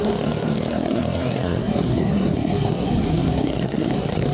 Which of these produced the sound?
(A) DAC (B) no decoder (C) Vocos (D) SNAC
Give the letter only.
D